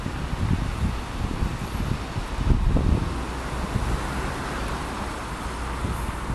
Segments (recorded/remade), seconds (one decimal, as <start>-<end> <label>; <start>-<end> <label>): 0.0-6.3 recorded